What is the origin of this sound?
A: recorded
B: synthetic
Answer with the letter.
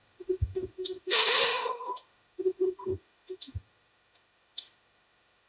B